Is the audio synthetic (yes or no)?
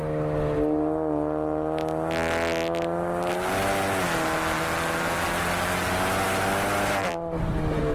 no